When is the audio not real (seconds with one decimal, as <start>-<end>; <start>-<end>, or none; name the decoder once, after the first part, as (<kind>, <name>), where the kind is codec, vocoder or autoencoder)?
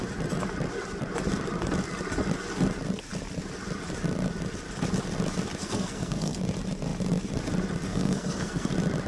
5.6-6.4 (codec, SNAC); 7.9-8.7